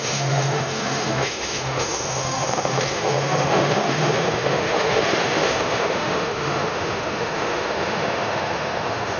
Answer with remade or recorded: remade